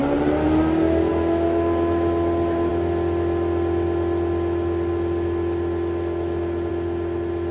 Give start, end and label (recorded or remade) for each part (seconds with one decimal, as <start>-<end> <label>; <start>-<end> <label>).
0.0-7.5 recorded